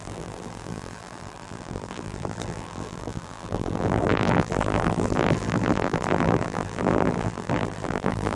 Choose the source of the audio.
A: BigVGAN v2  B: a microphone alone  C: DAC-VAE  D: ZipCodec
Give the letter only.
A